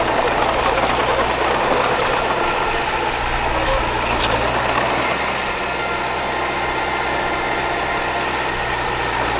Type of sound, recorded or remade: recorded